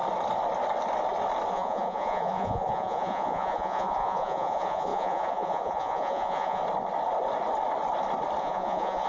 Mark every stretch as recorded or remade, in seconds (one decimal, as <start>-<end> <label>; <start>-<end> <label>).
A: 0.0-1.5 recorded; 1.5-6.6 remade; 6.6-8.4 recorded; 8.4-9.1 remade